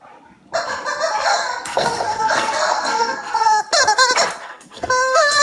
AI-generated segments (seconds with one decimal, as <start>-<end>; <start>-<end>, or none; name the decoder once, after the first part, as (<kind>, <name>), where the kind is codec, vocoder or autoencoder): 1.3-3.6 (codec, SNAC); 4.4-5.4